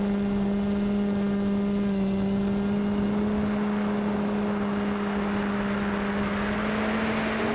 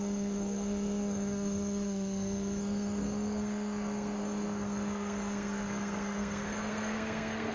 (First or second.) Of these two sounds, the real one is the first